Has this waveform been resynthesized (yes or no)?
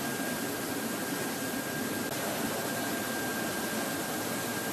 no